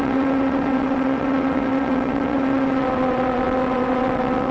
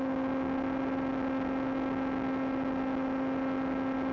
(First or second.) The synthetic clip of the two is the first